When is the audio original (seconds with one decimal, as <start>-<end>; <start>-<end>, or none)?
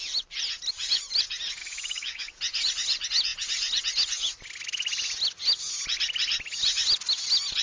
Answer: 0.0-1.6; 2.4-7.6